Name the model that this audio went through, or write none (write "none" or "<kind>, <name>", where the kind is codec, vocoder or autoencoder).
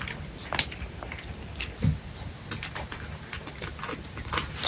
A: none